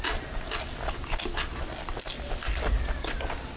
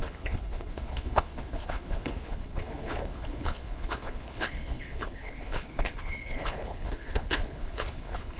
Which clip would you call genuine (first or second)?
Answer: first